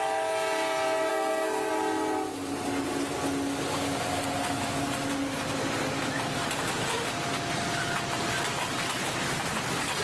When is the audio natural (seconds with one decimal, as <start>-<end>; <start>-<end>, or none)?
0.0-1.1; 1.7-10.0